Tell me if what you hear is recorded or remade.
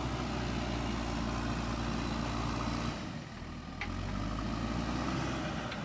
recorded